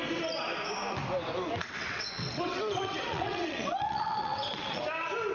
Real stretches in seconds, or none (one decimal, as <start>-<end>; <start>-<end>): 0.0-1.6; 4.8-5.3